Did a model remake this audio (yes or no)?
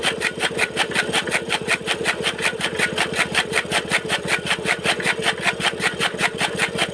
no